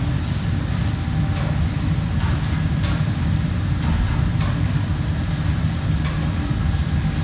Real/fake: real